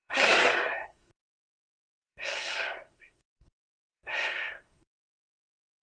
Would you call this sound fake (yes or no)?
yes